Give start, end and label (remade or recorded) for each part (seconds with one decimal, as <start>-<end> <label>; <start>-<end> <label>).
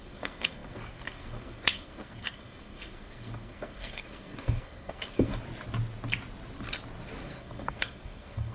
0.0-5.3 remade; 5.3-7.2 recorded; 7.2-8.5 remade